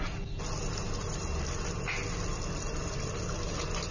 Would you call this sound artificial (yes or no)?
no